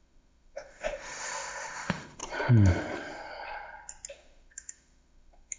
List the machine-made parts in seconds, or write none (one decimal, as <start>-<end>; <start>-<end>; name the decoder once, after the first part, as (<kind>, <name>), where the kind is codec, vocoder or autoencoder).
0.0-2.2 (autoencoder, DAC-VAE); 4.1-5.6

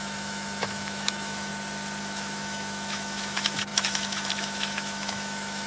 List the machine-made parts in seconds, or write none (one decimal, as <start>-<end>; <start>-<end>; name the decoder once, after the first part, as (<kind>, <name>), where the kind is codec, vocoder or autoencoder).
0.0-1.5 (autoencoder, DAC-VAE); 2.0-5.7